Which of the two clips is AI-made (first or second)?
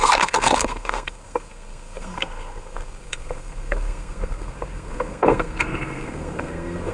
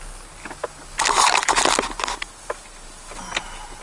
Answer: first